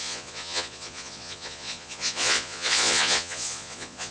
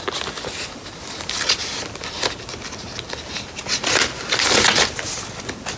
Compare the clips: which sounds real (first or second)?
second